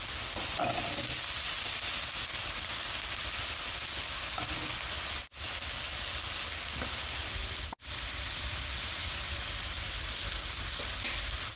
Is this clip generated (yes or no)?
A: no